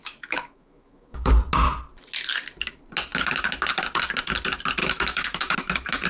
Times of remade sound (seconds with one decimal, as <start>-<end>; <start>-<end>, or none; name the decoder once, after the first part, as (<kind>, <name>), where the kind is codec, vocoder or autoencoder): 0.0-1.3 (autoencoder, DAC-VAE); 4.8-5.6